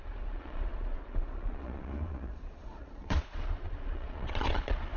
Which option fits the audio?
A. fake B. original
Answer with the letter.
A